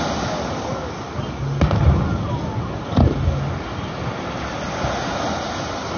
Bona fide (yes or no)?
yes